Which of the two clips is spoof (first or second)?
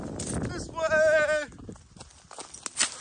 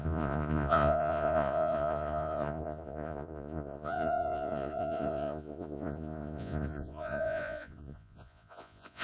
second